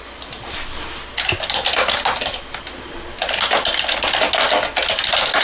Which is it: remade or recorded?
recorded